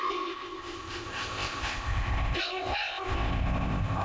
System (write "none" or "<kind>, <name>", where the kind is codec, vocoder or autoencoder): codec, ZipCodec